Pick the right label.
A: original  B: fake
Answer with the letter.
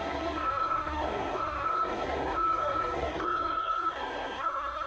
B